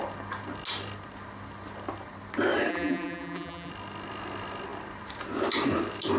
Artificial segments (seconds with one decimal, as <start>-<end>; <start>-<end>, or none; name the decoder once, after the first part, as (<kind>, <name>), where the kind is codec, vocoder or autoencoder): 2.7-3.7 (vocoder, BigVGAN v2)